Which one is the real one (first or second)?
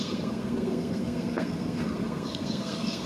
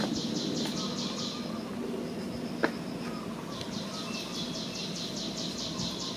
second